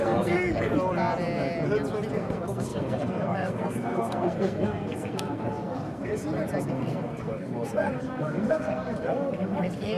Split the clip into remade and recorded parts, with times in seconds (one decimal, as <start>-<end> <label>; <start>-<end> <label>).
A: 0.0-0.7 remade; 0.7-2.1 recorded; 2.1-6.1 remade; 6.1-6.6 recorded; 6.6-10.0 remade

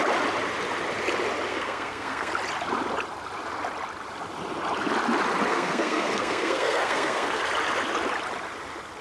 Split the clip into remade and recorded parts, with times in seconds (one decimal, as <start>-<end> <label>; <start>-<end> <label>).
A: 0.0-1.5 recorded; 1.5-2.3 remade; 2.3-5.5 recorded; 5.5-7.4 remade; 7.4-9.0 recorded

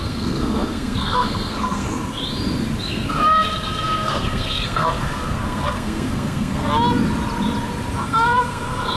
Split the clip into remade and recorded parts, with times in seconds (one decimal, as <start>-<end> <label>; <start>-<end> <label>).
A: 0.0-2.2 remade; 2.2-2.8 recorded; 2.8-6.7 remade; 6.7-8.0 recorded; 8.0-9.0 remade

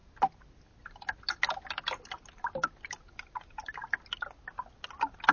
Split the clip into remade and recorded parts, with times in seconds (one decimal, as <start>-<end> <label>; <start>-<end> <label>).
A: 0.0-5.3 recorded

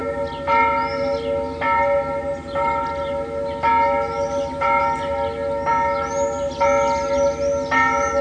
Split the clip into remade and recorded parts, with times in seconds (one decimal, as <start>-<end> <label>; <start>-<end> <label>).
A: 0.0-8.2 recorded

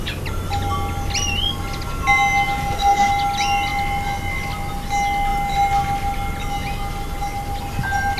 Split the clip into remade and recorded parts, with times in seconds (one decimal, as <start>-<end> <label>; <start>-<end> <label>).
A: 0.0-2.6 recorded; 2.6-3.1 remade; 3.1-8.2 recorded

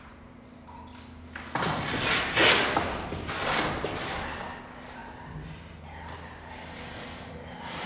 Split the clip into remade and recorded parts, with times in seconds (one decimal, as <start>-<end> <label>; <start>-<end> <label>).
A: 0.0-7.9 recorded

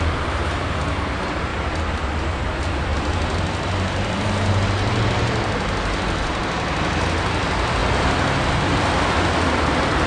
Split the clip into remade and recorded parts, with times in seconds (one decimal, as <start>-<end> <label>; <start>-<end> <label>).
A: 0.0-10.1 recorded